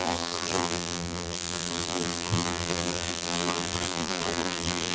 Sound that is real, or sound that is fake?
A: fake